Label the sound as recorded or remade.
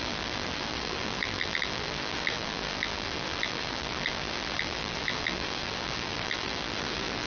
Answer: remade